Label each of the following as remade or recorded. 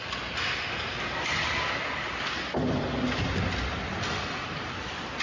recorded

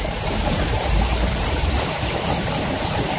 remade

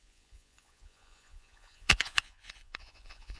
remade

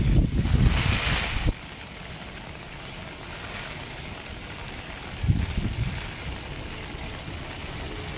recorded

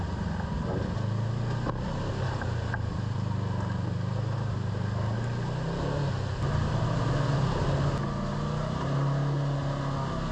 recorded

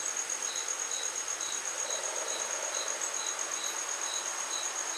recorded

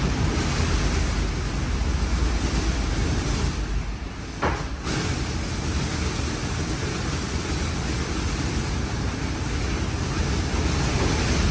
recorded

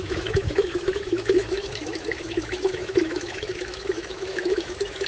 remade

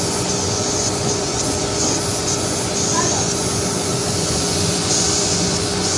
remade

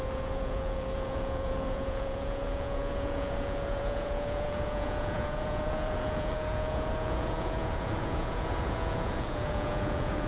remade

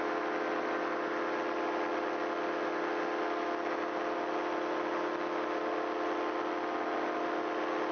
recorded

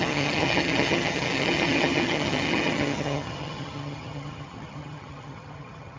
remade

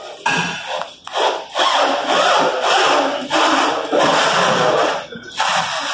recorded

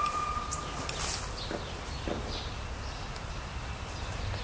recorded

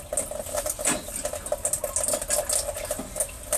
recorded